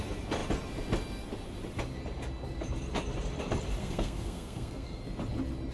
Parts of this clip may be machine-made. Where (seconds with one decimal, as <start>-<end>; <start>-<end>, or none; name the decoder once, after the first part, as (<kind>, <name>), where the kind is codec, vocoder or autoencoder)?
3.8-5.0 (codec, SNAC)